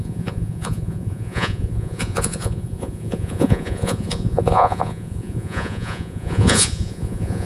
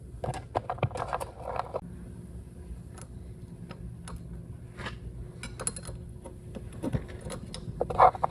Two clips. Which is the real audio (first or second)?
second